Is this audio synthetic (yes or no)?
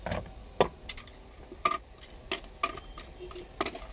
no